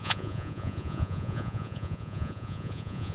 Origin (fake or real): fake